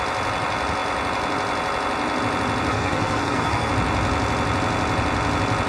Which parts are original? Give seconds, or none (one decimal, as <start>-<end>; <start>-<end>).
0.0-2.7; 3.7-5.7